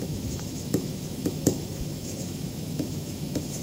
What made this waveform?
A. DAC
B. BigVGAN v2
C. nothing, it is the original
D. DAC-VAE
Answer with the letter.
D